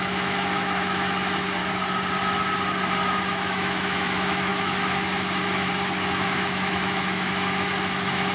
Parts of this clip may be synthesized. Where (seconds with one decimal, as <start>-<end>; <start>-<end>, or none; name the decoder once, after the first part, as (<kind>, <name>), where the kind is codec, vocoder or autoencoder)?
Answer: 0.0-1.6 (autoencoder, DAC-VAE); 3.2-8.3

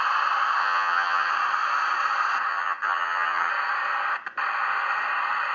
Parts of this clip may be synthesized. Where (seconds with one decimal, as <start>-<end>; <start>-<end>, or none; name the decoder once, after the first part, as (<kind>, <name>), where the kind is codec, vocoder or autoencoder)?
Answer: 0.6-1.3 (vocoder, HiFi-GAN); 2.5-3.5

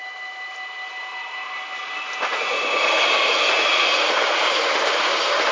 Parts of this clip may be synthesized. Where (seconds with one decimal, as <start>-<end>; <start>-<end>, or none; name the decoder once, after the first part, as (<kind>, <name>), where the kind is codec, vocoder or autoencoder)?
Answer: none

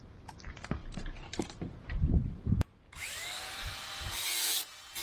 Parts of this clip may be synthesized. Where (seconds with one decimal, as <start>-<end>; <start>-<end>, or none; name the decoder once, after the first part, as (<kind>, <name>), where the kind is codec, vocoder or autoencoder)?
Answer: 0.8-3.6 (vocoder, BigVGAN v2)

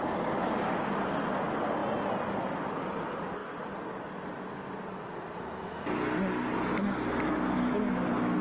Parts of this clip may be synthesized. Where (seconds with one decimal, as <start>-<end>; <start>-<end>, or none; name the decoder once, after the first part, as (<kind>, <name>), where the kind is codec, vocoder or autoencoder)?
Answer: none

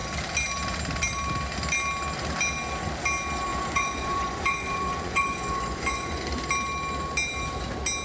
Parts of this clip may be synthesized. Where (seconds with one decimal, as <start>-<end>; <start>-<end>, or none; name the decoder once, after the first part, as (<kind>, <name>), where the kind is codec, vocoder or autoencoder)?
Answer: 3.5-6.2 (vocoder, Vocos)